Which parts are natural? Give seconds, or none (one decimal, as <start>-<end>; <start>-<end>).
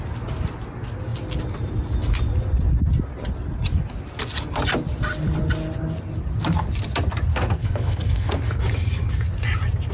0.0-7.3; 8.6-9.9